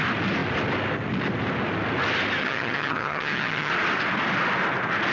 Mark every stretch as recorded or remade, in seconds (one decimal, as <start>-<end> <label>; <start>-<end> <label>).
0.0-2.4 recorded; 2.4-3.7 remade; 3.7-5.1 recorded